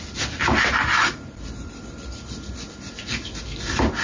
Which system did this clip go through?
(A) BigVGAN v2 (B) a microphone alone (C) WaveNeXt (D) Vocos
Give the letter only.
A